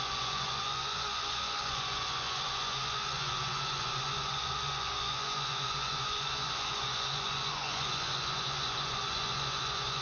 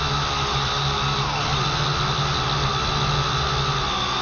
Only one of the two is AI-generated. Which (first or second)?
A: first